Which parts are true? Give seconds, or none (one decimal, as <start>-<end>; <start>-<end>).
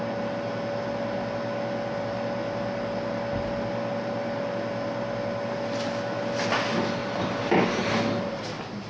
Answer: 0.0-8.9